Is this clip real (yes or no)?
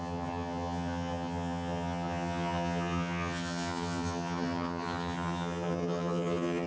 no